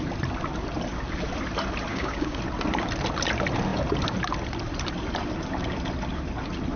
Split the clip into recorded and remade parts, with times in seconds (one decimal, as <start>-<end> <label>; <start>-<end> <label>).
0.0-1.9 recorded; 1.9-2.4 remade; 2.4-6.8 recorded